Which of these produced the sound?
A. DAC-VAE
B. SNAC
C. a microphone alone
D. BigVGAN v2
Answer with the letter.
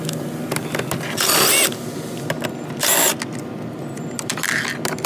C